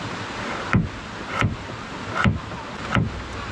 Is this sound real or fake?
real